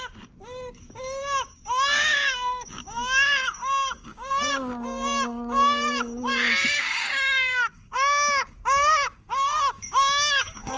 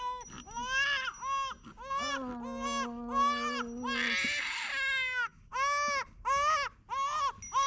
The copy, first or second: first